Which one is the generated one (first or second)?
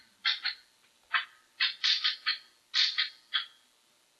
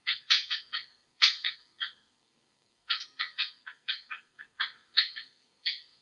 second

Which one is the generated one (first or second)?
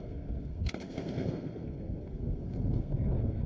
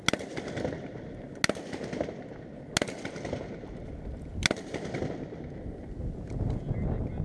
first